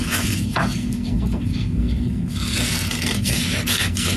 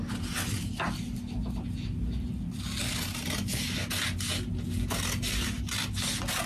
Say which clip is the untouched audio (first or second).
second